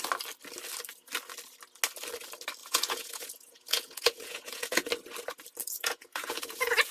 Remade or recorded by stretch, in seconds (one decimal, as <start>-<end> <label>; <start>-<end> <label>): 0.0-2.6 recorded; 2.6-4.9 remade; 4.9-5.6 recorded; 5.6-6.9 remade